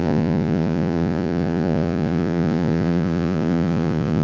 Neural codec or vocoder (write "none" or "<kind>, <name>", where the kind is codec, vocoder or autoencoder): vocoder, Vocos